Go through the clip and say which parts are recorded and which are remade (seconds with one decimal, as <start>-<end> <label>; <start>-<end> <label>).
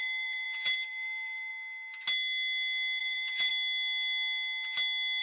0.0-1.5 remade; 1.5-3.0 recorded; 3.0-3.5 remade; 3.5-5.2 recorded